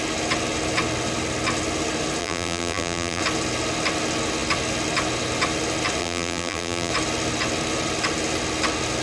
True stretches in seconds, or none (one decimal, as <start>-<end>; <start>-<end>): 0.0-2.2; 3.2-6.0; 6.9-9.0